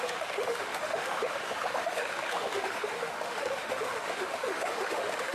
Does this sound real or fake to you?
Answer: fake